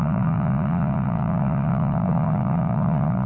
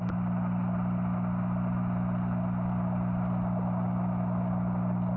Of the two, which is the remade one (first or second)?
first